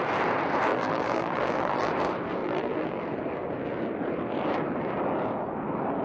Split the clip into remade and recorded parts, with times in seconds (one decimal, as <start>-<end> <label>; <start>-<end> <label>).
0.0-0.7 recorded; 0.7-1.9 remade; 1.9-2.4 recorded; 2.4-3.0 remade; 3.0-6.0 recorded

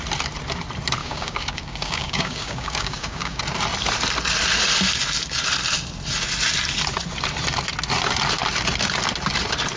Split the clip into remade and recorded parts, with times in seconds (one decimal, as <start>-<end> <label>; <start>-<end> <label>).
0.0-1.0 recorded; 1.0-3.4 remade; 3.4-9.8 recorded

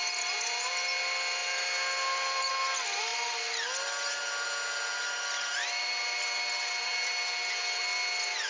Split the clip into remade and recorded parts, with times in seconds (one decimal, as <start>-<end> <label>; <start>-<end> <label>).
0.0-8.5 recorded

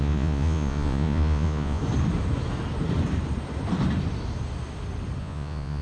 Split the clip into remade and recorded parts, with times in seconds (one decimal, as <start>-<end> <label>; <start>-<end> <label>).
0.0-1.8 remade; 1.8-5.2 recorded; 5.2-5.8 remade

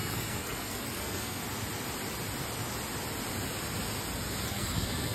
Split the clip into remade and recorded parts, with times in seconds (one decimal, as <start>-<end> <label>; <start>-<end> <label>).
0.0-1.4 remade; 1.4-4.5 recorded; 4.5-5.1 remade

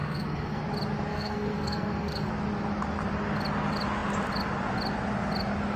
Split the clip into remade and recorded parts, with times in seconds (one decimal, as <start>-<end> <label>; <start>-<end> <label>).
0.0-0.6 remade; 0.6-1.1 recorded; 1.1-2.3 remade; 2.3-5.8 recorded